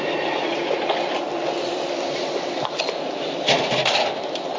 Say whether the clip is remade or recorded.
recorded